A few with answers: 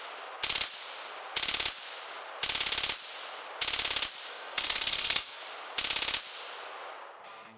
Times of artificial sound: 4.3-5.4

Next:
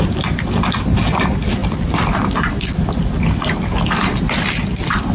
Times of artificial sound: none

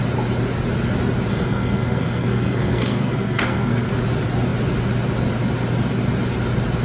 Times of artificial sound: 1.3-3.9

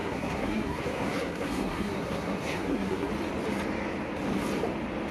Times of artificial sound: 0.0-3.1

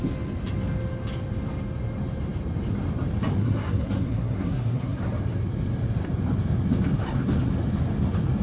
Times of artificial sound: 3.4-5.0

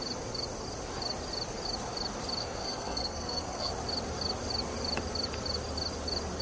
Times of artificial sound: 2.4-3.7